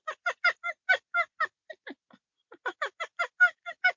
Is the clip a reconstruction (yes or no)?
no